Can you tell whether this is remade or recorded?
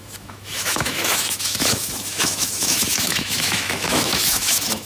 remade